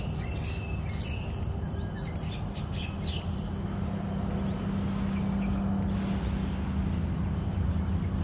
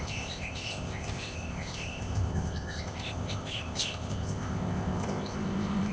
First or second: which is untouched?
first